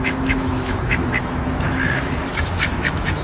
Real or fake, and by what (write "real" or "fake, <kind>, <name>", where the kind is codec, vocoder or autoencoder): fake, autoencoder, DAC-VAE